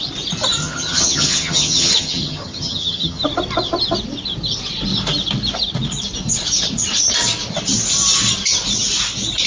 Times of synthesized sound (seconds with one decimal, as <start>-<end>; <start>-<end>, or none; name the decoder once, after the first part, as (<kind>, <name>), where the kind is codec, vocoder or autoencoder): 0.6-3.2 (vocoder, HiFi-GAN)